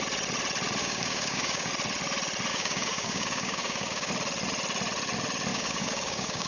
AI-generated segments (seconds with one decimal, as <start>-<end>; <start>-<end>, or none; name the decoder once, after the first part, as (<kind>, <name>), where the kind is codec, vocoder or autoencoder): 0.8-1.7 (codec, DAC); 2.5-4.1; 5.5-6.5